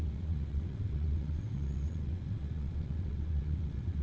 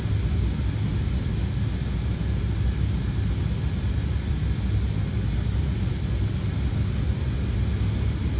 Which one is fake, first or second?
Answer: first